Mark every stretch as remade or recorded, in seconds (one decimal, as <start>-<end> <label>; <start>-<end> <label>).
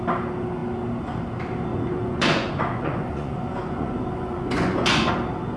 0.0-1.7 recorded; 1.7-5.1 remade; 5.1-5.6 recorded